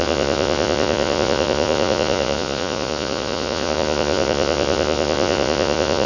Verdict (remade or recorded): remade